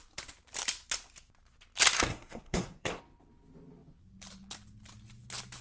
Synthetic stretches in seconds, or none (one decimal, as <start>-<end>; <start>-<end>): 2.1-3.0